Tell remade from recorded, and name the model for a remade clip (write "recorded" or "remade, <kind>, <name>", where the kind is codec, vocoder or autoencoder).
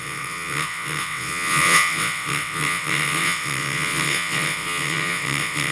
remade, vocoder, WaveNeXt